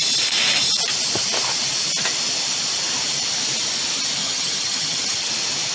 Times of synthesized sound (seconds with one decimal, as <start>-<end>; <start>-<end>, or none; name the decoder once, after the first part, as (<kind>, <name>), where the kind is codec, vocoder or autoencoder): 4.2-5.3 (vocoder, HiFi-GAN)